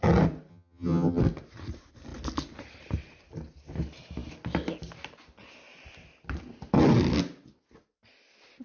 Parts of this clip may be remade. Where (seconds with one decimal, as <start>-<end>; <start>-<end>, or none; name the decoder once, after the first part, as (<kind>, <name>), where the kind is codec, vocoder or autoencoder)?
0.5-1.2 (vocoder, HiFi-GAN)